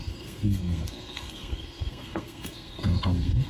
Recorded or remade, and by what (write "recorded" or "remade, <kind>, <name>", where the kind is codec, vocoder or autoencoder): remade, codec, SNAC